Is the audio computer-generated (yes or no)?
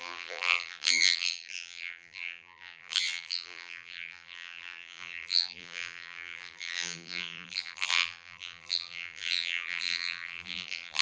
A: yes